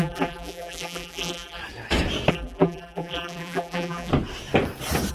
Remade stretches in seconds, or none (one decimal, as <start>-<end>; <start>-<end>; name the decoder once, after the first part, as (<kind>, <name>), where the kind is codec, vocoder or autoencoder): 0.0-1.6 (vocoder, BigVGAN v2); 2.3-4.1